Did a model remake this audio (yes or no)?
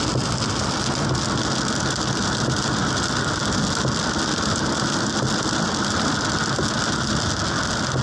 no